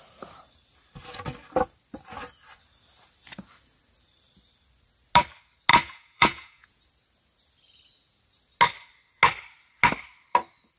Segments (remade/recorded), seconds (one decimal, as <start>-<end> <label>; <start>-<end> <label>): 0.0-5.7 recorded; 5.7-6.8 remade; 6.8-10.8 recorded

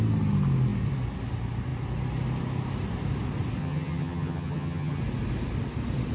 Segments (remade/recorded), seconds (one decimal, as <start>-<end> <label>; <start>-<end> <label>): 0.0-3.6 recorded; 3.6-5.0 remade; 5.0-6.1 recorded

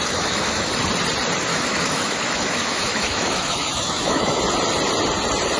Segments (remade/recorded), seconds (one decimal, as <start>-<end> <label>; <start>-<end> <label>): 0.0-0.7 remade; 0.7-1.5 recorded; 1.5-4.4 remade; 4.4-5.6 recorded

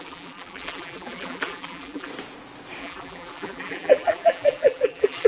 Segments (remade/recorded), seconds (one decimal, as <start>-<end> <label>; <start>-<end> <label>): 0.0-2.1 remade; 2.1-2.8 recorded; 2.8-5.3 remade

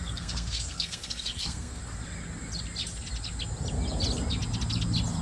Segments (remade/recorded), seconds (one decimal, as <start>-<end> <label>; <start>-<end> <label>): 0.0-1.8 remade; 1.8-5.2 recorded